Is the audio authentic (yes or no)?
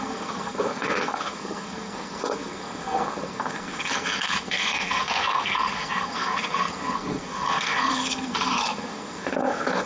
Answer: no